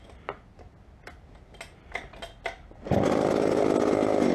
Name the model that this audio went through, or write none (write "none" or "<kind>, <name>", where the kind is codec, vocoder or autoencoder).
none